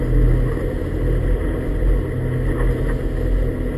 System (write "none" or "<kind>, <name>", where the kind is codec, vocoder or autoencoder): none